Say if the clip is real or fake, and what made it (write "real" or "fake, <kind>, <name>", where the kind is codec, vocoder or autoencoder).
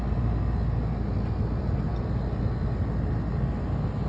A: real